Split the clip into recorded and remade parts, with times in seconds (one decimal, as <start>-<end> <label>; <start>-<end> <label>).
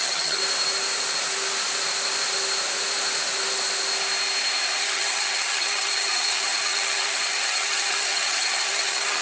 0.0-0.4 remade; 0.4-4.8 recorded; 4.8-9.2 remade